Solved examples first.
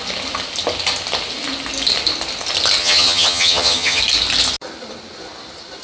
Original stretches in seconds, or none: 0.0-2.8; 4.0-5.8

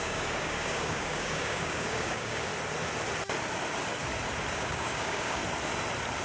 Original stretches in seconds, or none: 2.5-4.5; 5.4-6.2

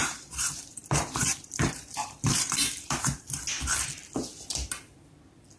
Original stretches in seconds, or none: 3.4-5.6

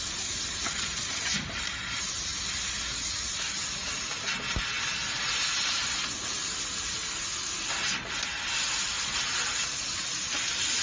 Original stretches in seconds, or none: 0.0-10.8

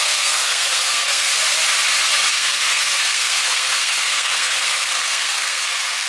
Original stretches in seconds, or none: 1.3-2.3

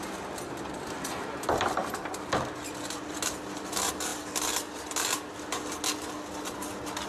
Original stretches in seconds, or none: 0.0-7.1

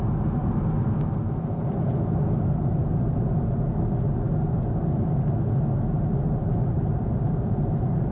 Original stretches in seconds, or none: 0.0-2.8; 3.4-6.4